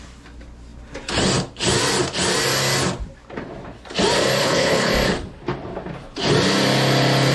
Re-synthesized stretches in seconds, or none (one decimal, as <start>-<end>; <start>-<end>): 4.4-4.9